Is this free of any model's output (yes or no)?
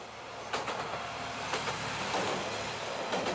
yes